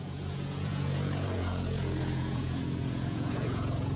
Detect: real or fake fake